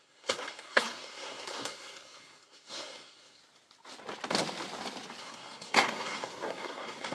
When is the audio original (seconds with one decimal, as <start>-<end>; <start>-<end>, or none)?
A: 3.4-5.2